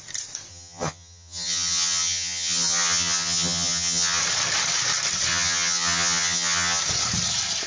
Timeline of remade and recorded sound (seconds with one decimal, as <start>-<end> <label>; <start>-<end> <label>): 0.0-0.5 recorded; 0.5-4.2 remade; 4.2-5.3 recorded; 5.3-6.8 remade; 6.8-7.7 recorded